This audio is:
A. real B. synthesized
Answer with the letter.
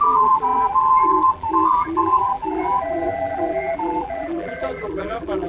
B